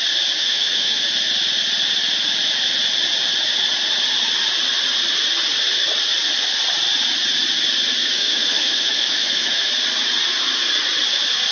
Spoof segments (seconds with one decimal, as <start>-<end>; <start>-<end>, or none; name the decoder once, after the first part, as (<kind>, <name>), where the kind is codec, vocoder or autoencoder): 0.4-1.0 (autoencoder, DAC-VAE); 8.0-9.7